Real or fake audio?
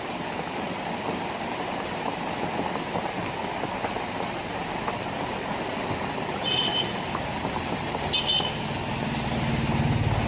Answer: real